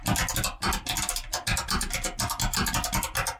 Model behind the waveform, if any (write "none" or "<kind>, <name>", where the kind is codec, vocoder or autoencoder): none